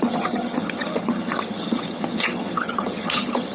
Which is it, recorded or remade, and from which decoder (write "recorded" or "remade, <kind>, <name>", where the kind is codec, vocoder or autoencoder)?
remade, vocoder, HiFi-GAN